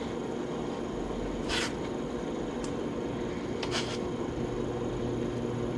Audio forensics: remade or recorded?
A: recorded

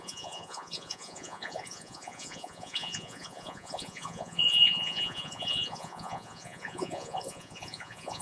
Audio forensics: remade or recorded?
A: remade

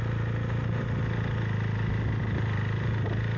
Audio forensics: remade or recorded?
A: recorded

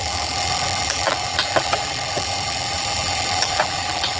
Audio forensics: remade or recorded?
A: remade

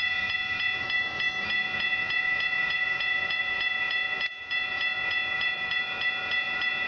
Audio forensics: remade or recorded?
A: remade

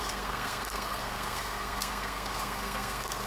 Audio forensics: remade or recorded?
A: remade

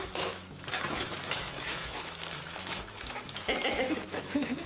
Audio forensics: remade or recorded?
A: remade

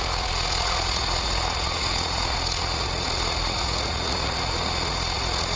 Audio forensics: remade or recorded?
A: remade